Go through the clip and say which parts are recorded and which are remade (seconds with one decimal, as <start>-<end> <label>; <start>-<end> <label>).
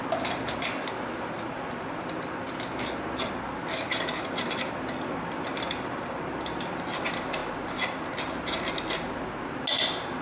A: 0.0-7.4 recorded; 7.4-8.1 remade; 8.1-10.2 recorded